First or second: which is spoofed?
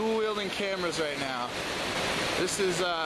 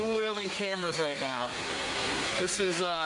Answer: second